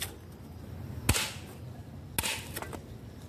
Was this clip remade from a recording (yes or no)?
no